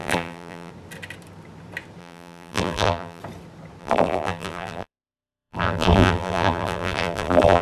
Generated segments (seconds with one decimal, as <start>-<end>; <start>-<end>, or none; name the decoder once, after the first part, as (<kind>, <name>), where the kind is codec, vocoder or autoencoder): 0.0-0.7 (vocoder, BigVGAN v2); 2.0-3.2; 3.8-7.6